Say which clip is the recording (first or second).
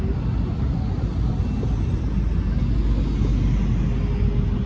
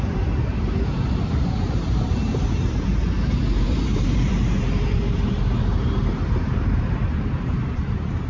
first